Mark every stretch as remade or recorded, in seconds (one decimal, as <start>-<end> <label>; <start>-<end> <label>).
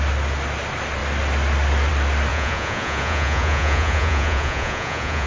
0.0-2.3 recorded; 2.3-5.3 remade